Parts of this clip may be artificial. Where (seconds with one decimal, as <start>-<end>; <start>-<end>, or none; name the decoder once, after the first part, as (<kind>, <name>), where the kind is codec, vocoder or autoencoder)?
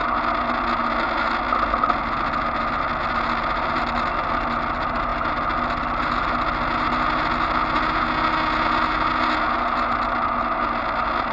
none